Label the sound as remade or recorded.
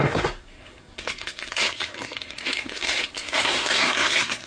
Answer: remade